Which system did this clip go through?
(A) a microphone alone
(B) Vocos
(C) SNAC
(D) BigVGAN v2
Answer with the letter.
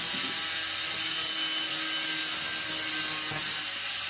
A